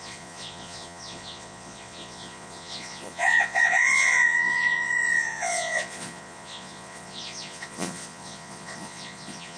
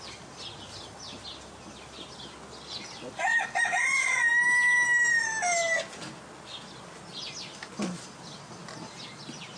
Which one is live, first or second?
second